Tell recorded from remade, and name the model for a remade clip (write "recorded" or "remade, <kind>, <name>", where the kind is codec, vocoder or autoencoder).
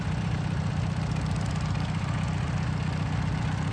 remade, vocoder, BigVGAN v2